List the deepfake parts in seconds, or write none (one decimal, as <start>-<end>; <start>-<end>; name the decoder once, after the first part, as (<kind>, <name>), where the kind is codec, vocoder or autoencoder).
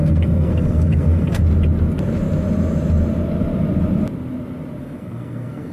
0.0-1.4 (codec, SNAC); 4.8-5.7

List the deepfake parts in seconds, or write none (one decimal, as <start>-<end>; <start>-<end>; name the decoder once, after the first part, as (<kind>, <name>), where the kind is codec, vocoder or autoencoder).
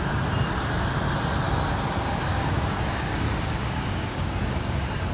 2.3-5.1 (codec, DAC)